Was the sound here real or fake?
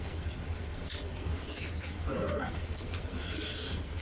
fake